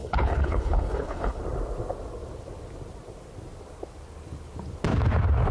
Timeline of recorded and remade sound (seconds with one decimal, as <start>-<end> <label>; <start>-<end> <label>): 0.0-1.4 remade; 1.4-5.5 recorded

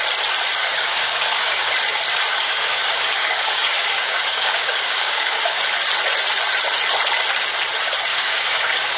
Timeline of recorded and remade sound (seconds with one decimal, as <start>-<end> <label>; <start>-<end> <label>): 0.0-0.6 recorded; 0.6-1.7 remade; 1.7-2.3 recorded; 2.3-5.6 remade; 5.6-8.1 recorded; 8.1-9.0 remade

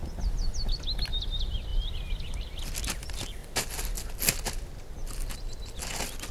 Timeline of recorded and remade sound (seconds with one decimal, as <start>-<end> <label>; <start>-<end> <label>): 0.0-0.5 remade; 0.5-1.7 recorded; 1.7-3.0 remade; 3.0-3.4 recorded; 3.4-4.1 remade; 4.1-5.0 recorded; 5.0-5.8 remade; 5.8-6.3 recorded

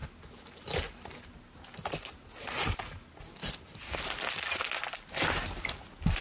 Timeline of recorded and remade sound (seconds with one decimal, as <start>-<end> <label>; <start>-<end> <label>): 0.0-6.2 recorded

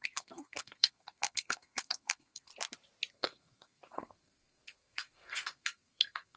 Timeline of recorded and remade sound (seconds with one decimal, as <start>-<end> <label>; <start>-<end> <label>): 0.0-2.5 remade; 2.5-3.1 recorded; 3.1-6.4 remade

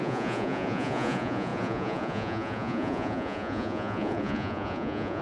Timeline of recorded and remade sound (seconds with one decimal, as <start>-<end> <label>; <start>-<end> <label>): 0.0-5.2 remade